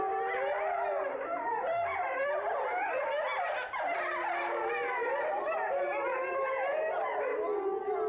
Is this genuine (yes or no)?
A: yes